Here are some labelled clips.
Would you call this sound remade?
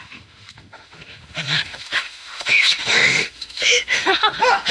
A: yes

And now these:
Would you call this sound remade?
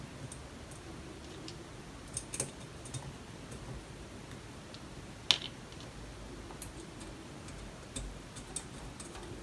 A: no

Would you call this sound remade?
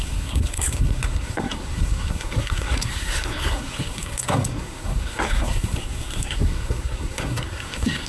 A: yes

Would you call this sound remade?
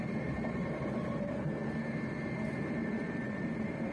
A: yes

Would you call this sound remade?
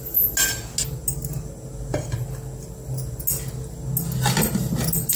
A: no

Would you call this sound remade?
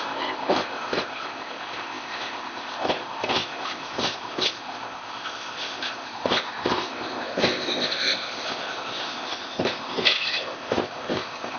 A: yes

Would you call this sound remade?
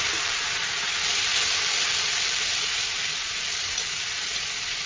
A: yes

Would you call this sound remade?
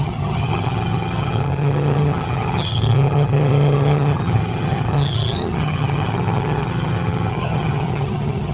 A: yes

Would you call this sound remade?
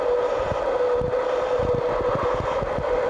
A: no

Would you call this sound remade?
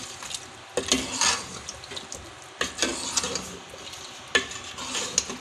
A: no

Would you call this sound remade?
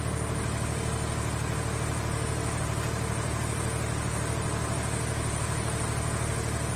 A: no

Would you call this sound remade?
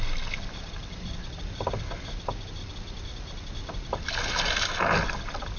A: no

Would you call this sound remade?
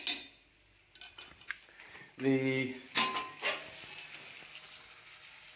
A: no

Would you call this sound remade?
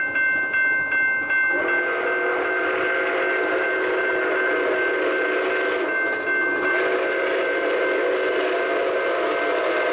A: no